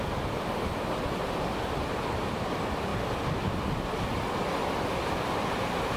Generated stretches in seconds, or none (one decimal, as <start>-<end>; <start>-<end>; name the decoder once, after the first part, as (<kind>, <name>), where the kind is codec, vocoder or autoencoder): none